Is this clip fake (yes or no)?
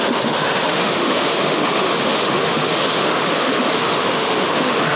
yes